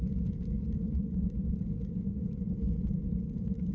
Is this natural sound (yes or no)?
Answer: yes